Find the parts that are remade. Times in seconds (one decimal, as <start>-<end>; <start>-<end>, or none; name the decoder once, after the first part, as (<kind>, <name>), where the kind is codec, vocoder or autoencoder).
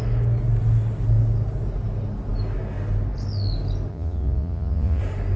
3.9-5.0 (vocoder, Vocos)